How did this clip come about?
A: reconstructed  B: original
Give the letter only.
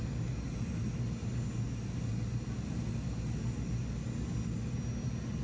B